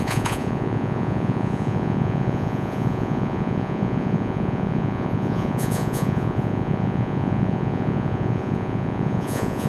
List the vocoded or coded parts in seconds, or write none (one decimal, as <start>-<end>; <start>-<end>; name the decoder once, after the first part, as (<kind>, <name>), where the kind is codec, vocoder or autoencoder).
0.0-9.7 (vocoder, Vocos)